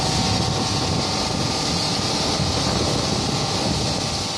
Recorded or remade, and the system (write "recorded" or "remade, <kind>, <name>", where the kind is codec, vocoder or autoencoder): recorded